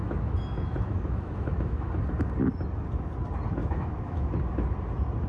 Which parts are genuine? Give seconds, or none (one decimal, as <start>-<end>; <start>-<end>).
1.9-3.6; 4.3-5.3